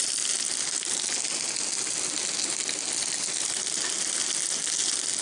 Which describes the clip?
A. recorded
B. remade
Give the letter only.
A